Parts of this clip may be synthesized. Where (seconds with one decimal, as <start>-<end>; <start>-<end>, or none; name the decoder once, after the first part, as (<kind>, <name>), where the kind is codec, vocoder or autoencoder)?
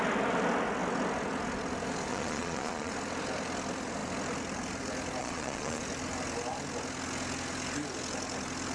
2.1-2.9 (vocoder, Vocos); 5.2-5.8